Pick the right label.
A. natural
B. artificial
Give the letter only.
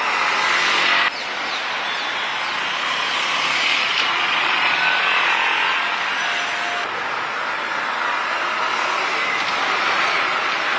A